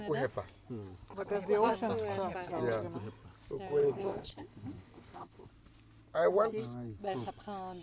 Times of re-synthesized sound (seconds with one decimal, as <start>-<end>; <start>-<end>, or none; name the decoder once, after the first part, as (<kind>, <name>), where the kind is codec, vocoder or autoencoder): 3.8-5.5 (codec, HILCodec)

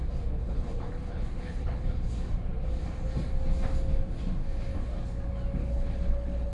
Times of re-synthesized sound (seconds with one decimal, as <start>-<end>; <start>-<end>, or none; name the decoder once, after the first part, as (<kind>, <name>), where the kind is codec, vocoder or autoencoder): 0.4-1.8 (codec, HILCodec); 5.6-6.5